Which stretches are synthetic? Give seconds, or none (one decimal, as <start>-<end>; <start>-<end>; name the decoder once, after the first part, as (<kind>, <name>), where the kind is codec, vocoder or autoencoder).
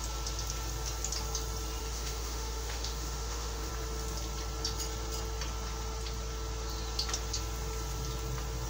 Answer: 1.8-3.7 (autoencoder, DAC-VAE)